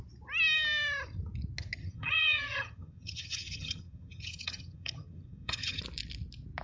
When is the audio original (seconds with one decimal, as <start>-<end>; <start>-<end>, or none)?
0.0-1.8; 5.8-6.6